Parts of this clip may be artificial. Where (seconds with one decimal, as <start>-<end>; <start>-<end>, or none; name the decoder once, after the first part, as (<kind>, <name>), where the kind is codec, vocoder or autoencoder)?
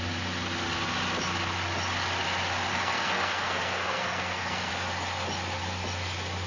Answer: 2.7-4.7 (codec, SNAC)